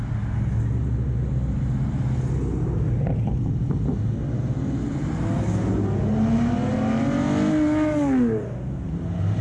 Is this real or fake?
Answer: real